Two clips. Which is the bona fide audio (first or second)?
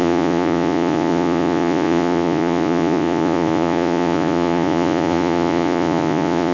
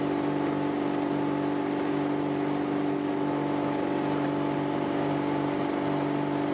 second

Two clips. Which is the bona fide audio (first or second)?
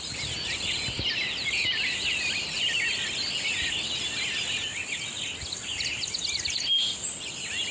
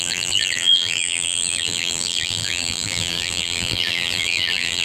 first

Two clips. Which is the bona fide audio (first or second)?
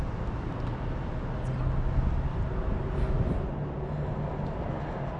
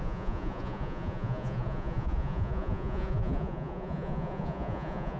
first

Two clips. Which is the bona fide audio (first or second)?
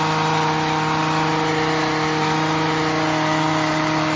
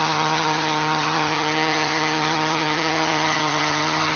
first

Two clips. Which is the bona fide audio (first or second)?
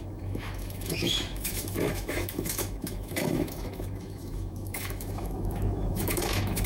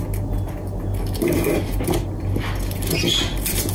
second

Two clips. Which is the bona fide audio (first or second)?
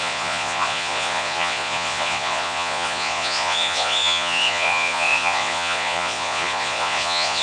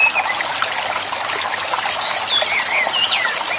second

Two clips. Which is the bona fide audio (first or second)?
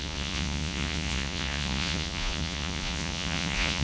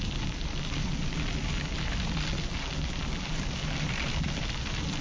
second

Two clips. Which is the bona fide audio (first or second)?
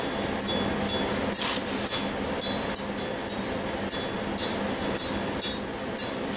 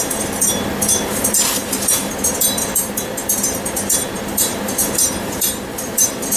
first